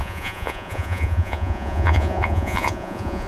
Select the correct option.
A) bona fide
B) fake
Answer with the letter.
B